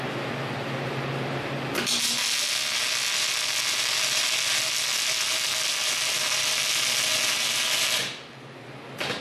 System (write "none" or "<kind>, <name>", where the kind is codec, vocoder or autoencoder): none